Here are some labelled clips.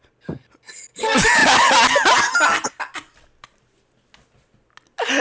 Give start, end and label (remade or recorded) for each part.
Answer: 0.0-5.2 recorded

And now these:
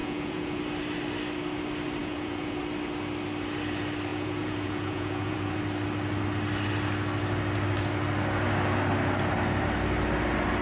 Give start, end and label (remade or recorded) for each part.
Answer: 0.0-0.6 remade; 0.6-2.0 recorded; 2.0-2.6 remade; 2.6-4.1 recorded; 4.1-5.6 remade; 5.6-10.6 recorded

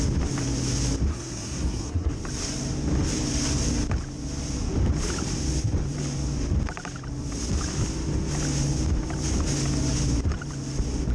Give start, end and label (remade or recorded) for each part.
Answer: 0.0-1.1 recorded; 1.1-2.1 remade; 2.1-11.1 recorded

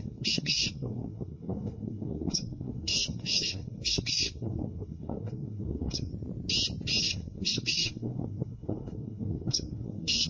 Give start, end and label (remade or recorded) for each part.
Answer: 0.0-6.1 remade; 6.1-7.0 recorded; 7.0-10.3 remade

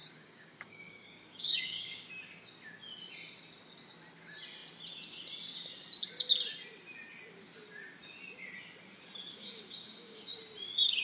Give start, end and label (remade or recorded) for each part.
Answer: 0.0-2.1 remade; 2.1-9.3 recorded; 9.3-10.4 remade; 10.4-11.0 recorded

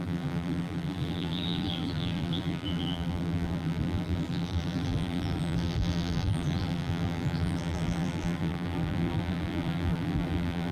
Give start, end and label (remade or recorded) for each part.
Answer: 0.0-10.7 remade

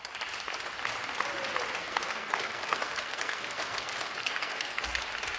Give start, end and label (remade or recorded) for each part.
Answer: 0.0-1.8 recorded; 1.8-5.0 remade; 5.0-5.4 recorded

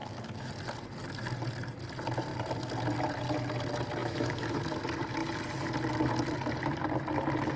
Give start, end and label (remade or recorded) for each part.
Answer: 0.0-0.5 remade; 0.5-4.0 recorded; 4.0-4.6 remade; 4.6-7.6 recorded